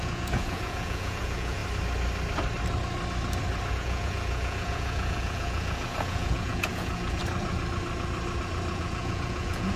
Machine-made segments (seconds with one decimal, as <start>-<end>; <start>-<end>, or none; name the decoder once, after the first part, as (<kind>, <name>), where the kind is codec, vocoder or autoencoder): 0.0-1.6 (vocoder, Vocos); 3.7-7.2; 8.7-9.8